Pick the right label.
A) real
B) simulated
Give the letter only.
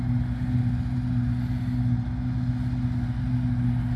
A